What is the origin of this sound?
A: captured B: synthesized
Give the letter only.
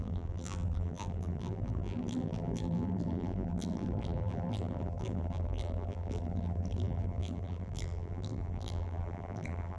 B